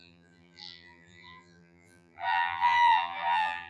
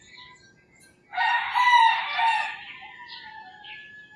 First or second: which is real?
second